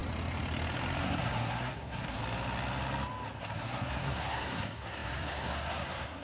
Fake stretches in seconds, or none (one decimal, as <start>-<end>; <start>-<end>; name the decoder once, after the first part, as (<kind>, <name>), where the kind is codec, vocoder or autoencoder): 1.0-2.2 (codec, SNAC); 3.4-6.2